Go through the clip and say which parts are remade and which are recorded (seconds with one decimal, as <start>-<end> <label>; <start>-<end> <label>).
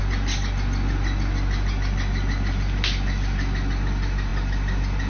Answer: 0.0-5.1 recorded